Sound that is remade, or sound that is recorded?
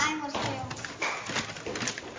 recorded